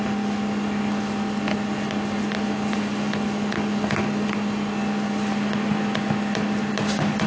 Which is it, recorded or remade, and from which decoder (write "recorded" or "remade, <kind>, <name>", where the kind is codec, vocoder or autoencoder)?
recorded